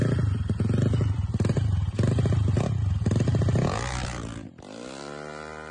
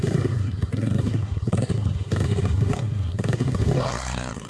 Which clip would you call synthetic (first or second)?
second